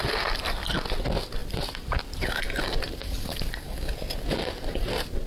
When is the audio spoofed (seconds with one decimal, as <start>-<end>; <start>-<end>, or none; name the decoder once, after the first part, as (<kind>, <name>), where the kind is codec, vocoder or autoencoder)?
1.4-2.6 (vocoder, BigVGAN v2)